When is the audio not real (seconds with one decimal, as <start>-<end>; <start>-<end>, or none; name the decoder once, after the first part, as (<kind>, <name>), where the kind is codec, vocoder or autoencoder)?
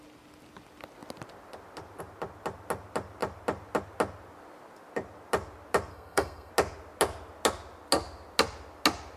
5.9-6.5 (codec, SNAC)